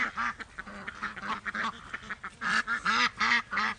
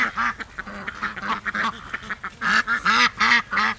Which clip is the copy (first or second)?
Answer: first